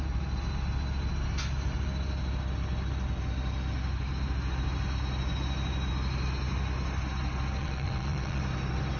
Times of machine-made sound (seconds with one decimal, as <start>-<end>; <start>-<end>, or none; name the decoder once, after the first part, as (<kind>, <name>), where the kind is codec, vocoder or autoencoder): 7.6-8.4 (vocoder, Vocos)